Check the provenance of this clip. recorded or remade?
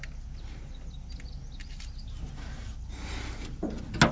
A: recorded